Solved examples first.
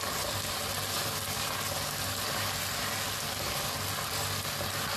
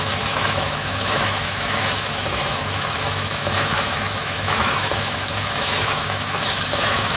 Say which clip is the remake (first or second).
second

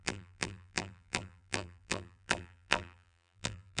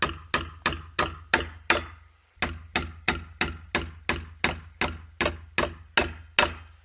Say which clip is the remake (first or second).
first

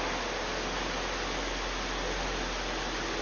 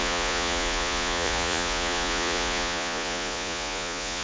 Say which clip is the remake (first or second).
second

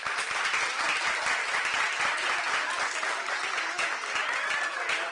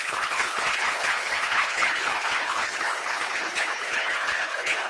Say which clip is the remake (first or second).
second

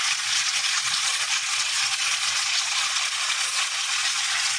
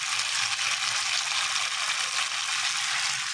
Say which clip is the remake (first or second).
first